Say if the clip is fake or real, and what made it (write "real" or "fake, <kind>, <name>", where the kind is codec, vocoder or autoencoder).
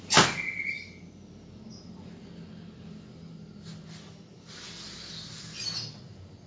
real